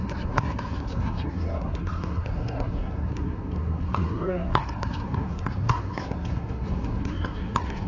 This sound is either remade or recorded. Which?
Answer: remade